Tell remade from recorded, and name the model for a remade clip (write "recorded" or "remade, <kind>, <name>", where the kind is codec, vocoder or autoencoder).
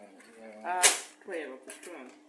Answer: recorded